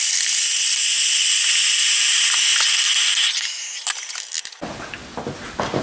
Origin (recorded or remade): recorded